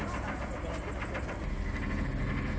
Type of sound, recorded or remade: recorded